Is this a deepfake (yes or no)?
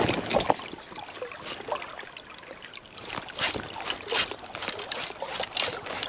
no